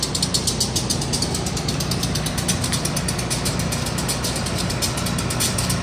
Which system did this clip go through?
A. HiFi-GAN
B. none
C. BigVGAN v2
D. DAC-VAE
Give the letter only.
B